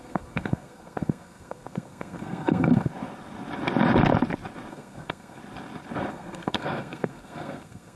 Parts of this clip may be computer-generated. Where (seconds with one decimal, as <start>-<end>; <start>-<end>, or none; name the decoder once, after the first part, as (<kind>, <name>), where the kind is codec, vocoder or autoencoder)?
0.0-2.9 (codec, SNAC); 4.7-5.4; 6.1-8.0